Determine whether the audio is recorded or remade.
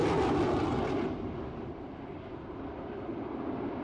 remade